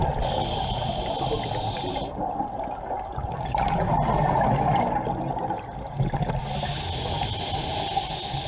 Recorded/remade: recorded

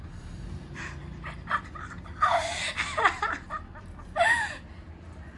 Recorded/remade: remade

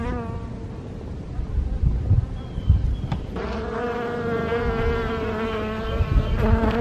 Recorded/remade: recorded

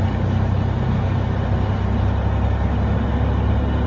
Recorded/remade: recorded